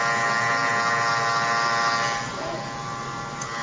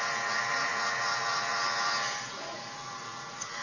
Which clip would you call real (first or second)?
first